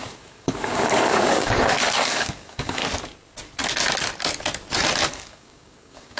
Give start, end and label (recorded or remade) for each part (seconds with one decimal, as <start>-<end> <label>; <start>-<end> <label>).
0.0-2.8 remade; 2.8-5.1 recorded; 5.1-6.2 remade

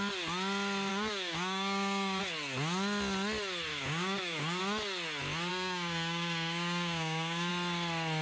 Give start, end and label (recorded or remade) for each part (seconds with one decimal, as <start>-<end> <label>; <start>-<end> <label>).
0.0-0.9 recorded; 0.9-2.2 remade; 2.2-3.7 recorded; 3.7-4.6 remade; 4.6-5.5 recorded; 5.5-7.5 remade; 7.5-8.2 recorded

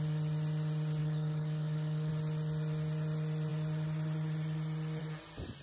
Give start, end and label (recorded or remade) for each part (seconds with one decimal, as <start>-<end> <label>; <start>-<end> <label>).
0.0-1.0 recorded; 1.0-2.1 remade; 2.1-5.6 recorded

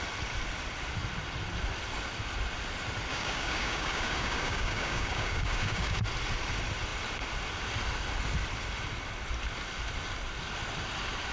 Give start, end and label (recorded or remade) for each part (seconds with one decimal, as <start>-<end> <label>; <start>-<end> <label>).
0.0-3.1 recorded; 3.1-6.0 remade; 6.0-11.3 recorded